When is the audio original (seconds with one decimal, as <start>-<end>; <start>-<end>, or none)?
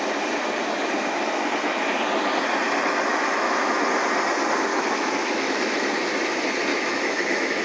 0.0-3.1; 3.7-4.7; 5.8-6.7